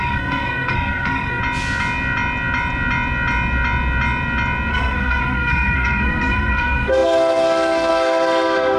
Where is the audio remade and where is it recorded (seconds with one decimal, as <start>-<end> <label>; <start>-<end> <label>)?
0.0-1.4 remade; 1.4-4.7 recorded; 4.7-8.8 remade